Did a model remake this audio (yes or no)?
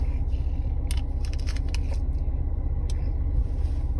no